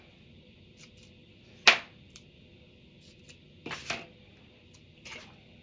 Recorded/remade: recorded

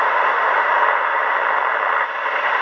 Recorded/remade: recorded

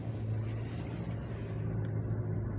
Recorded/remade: recorded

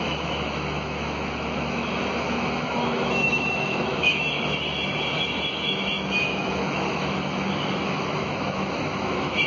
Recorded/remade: remade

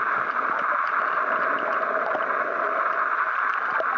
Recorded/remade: recorded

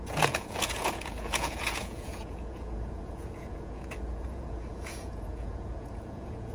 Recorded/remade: remade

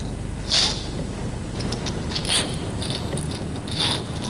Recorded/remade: recorded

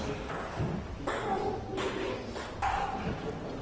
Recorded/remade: recorded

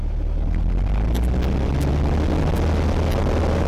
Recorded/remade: recorded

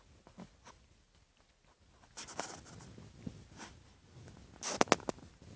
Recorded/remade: recorded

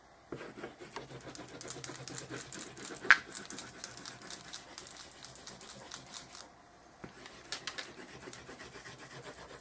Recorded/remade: recorded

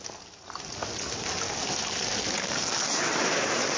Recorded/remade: recorded